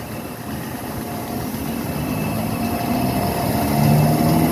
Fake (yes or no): no